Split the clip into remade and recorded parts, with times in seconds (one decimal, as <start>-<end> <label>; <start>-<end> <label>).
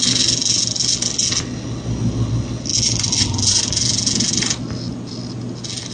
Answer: 0.0-5.9 recorded